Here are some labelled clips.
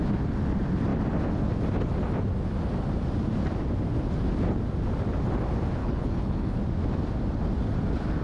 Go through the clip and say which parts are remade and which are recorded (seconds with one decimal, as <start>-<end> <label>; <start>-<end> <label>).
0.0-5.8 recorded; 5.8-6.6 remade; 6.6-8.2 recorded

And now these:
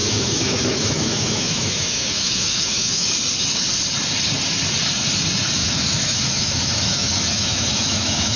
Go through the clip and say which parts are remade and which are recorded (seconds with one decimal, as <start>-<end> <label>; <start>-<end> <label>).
0.0-3.1 remade; 3.1-5.6 recorded; 5.6-8.4 remade

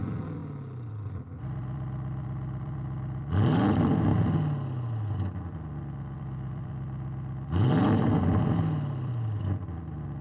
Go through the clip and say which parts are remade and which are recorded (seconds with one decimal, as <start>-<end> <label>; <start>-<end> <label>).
0.0-0.4 remade; 0.4-0.9 recorded; 0.9-4.1 remade; 4.1-6.2 recorded; 6.2-10.2 remade